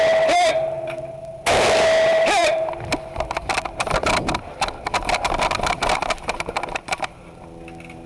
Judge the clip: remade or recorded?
remade